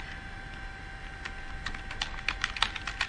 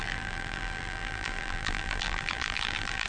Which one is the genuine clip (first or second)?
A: first